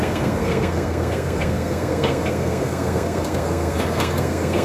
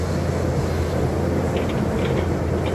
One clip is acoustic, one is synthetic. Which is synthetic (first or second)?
first